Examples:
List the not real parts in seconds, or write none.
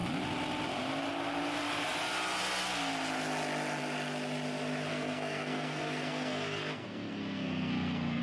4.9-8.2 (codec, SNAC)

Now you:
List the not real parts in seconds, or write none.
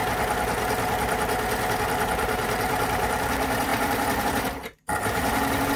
1.8-5.8 (vocoder, BigVGAN v2)